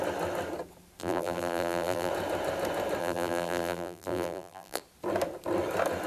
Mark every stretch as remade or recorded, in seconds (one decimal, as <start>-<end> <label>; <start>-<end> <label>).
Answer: 0.0-1.0 recorded; 1.0-2.1 remade; 2.1-3.0 recorded; 3.0-4.8 remade; 4.8-6.1 recorded